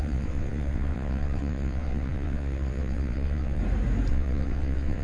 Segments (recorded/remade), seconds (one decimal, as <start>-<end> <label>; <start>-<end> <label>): 0.0-3.6 remade; 3.6-4.1 recorded; 4.1-5.0 remade